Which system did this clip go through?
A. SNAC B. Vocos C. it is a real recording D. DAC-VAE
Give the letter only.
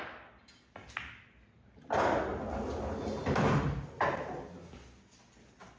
C